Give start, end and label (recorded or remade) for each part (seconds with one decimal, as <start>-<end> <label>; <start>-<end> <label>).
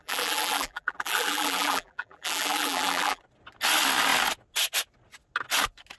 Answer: 0.0-3.2 remade; 3.2-6.0 recorded